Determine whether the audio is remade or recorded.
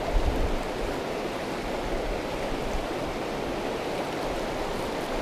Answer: recorded